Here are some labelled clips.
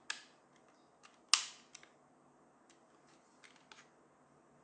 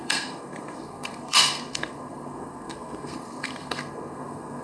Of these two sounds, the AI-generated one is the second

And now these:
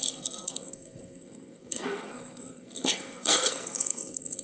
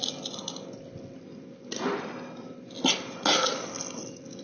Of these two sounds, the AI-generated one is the first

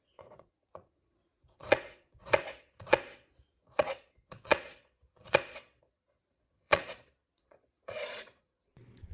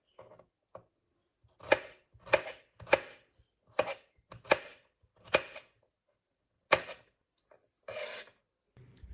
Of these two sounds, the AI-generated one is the first